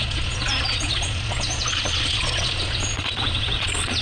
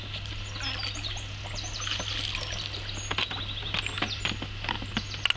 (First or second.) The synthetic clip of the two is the first